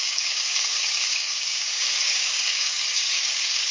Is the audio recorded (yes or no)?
no